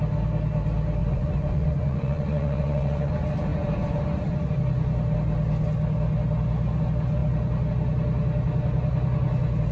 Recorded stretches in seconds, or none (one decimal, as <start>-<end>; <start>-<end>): 0.0-1.0; 3.1-9.7